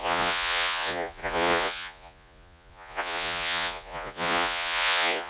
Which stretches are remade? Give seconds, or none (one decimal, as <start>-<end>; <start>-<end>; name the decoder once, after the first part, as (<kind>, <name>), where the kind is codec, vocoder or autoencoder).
0.0-5.3 (vocoder, Vocos)